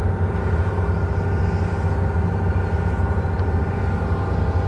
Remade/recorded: recorded